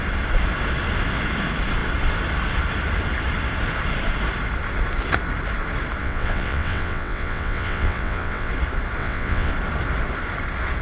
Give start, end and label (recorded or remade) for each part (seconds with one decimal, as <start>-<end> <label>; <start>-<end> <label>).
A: 0.0-6.0 recorded; 6.0-8.5 remade; 8.5-9.0 recorded; 9.0-9.5 remade; 9.5-10.8 recorded